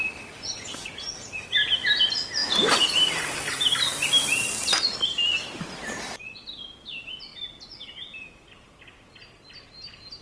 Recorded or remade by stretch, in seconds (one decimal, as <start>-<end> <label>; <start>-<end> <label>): 0.0-10.2 recorded